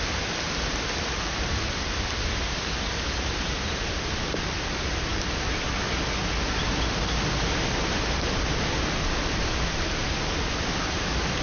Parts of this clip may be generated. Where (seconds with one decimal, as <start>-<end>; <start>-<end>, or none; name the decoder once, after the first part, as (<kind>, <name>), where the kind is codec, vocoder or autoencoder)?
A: none